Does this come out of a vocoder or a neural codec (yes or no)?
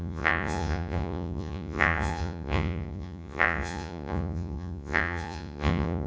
yes